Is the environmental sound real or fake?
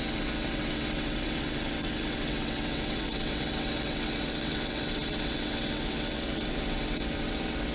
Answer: fake